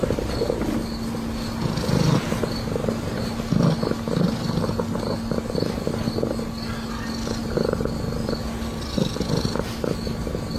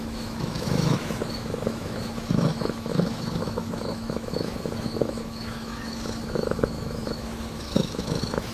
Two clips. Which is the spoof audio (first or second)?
second